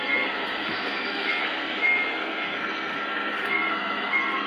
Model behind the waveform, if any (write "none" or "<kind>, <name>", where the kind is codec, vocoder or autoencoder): codec, SNAC